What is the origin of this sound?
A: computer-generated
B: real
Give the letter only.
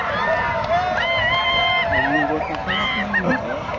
B